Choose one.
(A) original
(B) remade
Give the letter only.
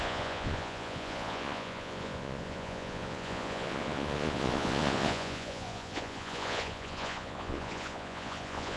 B